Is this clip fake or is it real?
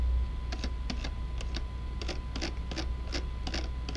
real